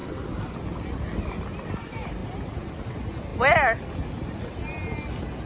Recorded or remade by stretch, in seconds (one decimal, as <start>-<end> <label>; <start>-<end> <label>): 0.0-5.5 recorded